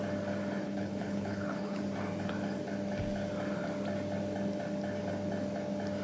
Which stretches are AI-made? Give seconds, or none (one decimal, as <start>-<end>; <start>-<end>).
0.6-1.8